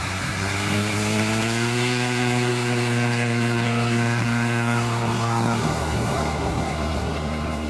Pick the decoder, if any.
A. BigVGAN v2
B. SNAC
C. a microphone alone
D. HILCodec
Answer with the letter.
B